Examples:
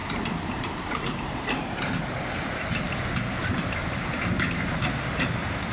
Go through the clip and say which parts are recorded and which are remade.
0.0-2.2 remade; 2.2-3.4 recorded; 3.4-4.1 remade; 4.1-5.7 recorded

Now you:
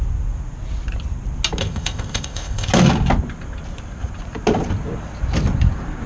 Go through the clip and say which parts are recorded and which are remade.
0.0-1.6 recorded; 1.6-2.7 remade; 2.7-6.1 recorded

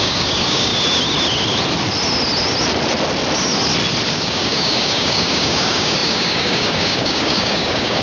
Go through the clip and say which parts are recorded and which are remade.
0.0-0.7 remade; 0.7-4.1 recorded; 4.1-8.0 remade

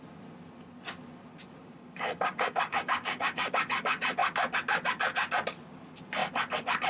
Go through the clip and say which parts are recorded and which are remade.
0.0-1.6 recorded; 1.6-3.5 remade; 3.5-6.9 recorded

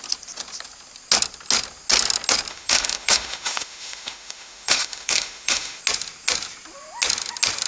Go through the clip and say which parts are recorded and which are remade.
0.0-2.5 recorded; 2.5-5.8 remade; 5.8-7.7 recorded

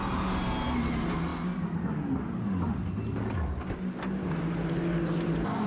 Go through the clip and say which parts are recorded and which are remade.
0.0-5.7 recorded

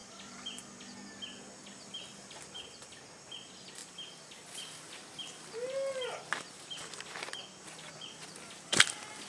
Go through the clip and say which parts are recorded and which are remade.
0.0-0.6 remade; 0.6-2.1 recorded; 2.1-3.0 remade; 3.0-3.8 recorded; 3.8-4.3 remade; 4.3-9.3 recorded